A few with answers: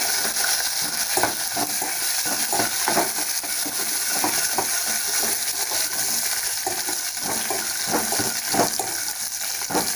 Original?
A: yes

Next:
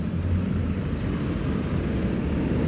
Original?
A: yes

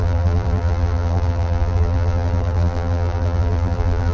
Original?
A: no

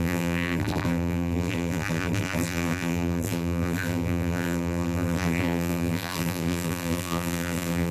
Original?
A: no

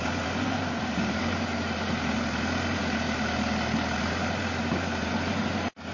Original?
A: no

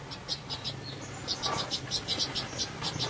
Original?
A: yes